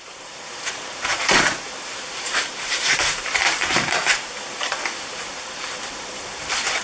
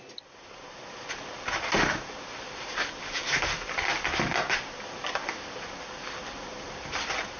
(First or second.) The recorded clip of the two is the second